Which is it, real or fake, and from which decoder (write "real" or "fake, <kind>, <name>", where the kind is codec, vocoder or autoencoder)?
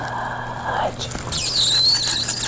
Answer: real